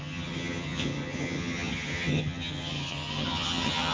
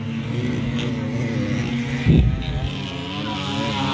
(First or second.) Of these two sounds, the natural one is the second